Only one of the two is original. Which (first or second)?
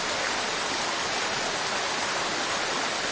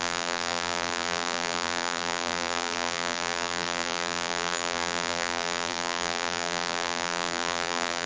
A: first